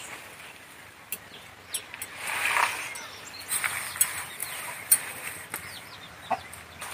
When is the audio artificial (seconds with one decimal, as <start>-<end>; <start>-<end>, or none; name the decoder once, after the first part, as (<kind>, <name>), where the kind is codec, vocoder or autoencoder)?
4.4-5.5 (vocoder, BigVGAN v2)